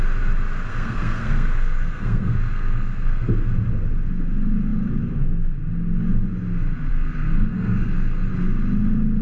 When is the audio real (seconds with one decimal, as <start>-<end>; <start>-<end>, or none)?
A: 0.0-0.7; 3.3-6.9; 8.3-9.2